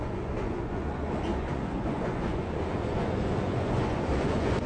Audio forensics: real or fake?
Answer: fake